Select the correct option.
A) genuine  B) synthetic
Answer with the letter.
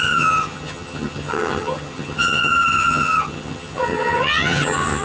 B